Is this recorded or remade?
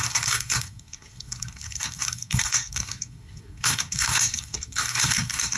remade